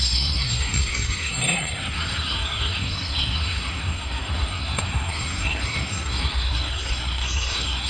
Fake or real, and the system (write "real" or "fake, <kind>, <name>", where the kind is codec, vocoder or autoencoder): fake, codec, SNAC